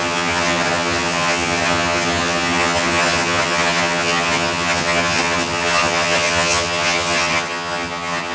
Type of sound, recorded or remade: remade